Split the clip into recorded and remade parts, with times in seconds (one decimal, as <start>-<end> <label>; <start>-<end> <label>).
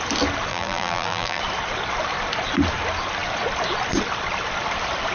0.0-0.5 recorded; 0.5-1.4 remade; 1.4-5.1 recorded